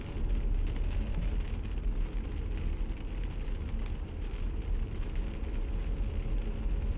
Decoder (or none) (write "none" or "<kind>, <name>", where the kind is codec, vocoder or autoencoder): none